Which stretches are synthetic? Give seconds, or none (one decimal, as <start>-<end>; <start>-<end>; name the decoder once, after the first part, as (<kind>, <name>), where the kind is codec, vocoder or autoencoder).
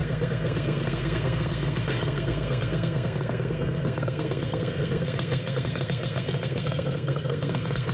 0.0-7.9 (codec, SNAC)